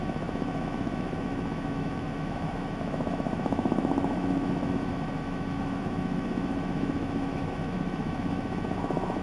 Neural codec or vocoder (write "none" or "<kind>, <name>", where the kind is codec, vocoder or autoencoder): autoencoder, DAC-VAE